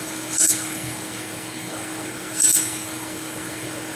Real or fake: fake